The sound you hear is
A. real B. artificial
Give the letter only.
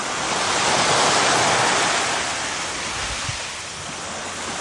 A